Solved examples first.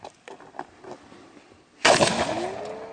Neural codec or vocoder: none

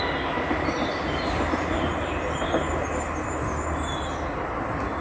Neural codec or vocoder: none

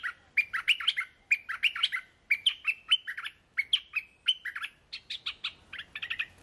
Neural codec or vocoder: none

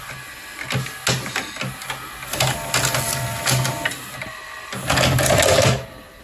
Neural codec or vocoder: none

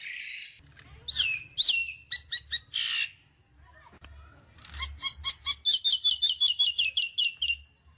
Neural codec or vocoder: none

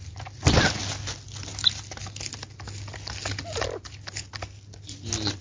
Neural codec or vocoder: none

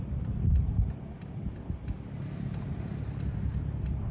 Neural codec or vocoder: none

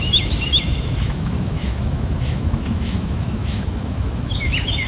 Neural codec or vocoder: autoencoder, DAC-VAE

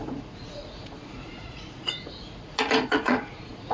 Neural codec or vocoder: vocoder, Vocos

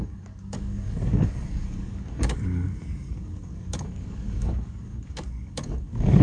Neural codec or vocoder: codec, DAC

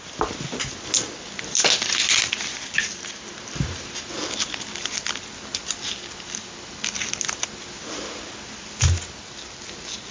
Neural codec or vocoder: none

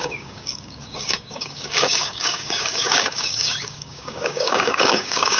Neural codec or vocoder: codec, DAC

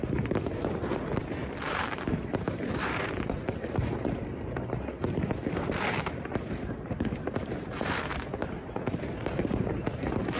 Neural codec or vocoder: vocoder, BigVGAN v2